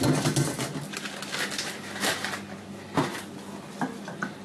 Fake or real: real